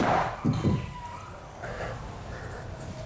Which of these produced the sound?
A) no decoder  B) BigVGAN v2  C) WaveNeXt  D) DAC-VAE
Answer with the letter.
B